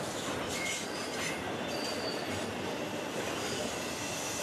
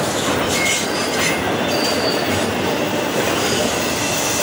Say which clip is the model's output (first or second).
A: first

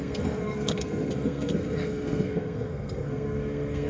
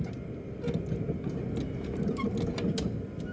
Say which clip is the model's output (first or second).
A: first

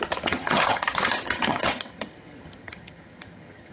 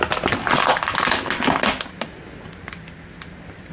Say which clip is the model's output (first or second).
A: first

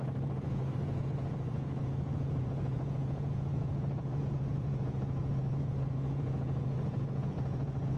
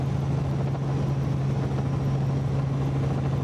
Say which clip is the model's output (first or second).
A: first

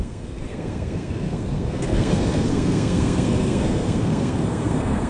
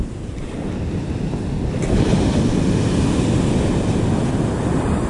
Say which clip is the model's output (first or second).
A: first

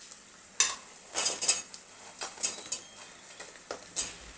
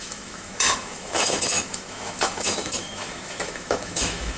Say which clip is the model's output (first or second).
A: second